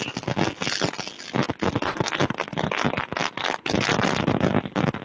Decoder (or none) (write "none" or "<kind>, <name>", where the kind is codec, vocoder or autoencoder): none